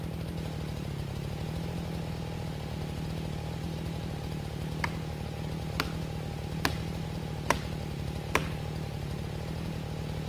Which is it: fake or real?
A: real